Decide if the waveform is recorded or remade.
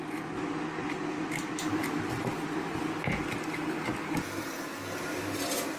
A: recorded